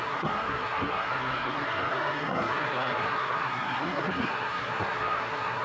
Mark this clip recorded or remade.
remade